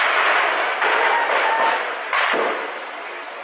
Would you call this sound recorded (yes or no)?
yes